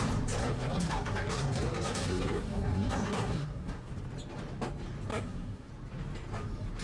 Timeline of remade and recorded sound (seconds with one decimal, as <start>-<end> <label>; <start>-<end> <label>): 0.0-0.4 recorded; 0.4-3.9 remade; 3.9-5.1 recorded; 5.1-5.7 remade; 5.7-6.8 recorded